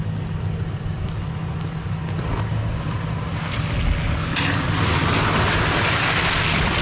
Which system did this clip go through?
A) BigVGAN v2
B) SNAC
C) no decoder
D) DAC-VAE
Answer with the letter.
C